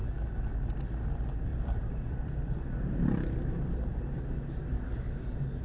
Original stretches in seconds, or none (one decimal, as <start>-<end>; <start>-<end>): 0.0-1.5; 4.2-5.6